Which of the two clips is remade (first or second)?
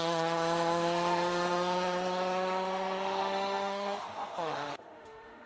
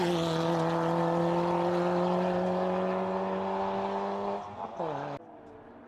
first